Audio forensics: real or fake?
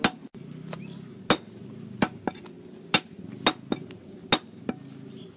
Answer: real